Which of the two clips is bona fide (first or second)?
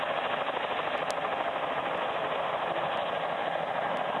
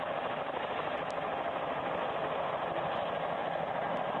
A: first